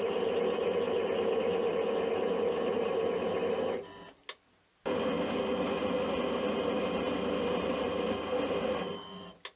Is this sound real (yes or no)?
yes